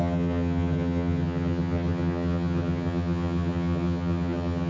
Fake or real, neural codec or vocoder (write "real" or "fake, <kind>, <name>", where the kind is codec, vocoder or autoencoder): fake, vocoder, HiFi-GAN